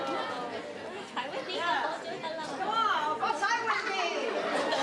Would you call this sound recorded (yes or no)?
yes